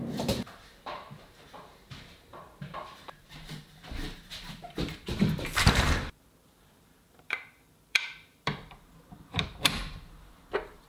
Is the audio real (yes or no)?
no